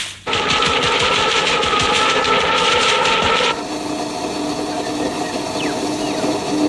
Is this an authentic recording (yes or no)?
yes